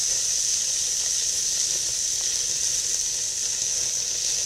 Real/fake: real